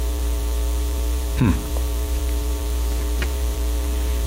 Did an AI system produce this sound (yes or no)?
yes